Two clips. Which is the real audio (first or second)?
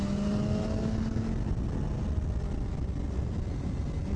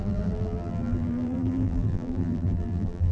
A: first